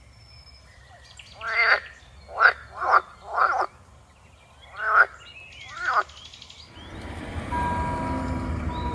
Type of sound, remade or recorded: recorded